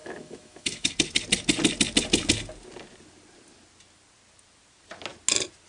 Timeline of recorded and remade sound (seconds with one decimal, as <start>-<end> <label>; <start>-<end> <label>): 0.0-0.9 remade; 0.9-5.7 recorded